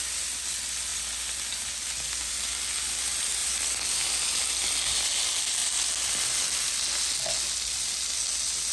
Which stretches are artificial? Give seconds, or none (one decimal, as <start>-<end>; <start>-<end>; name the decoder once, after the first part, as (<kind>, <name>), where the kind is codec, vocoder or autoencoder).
none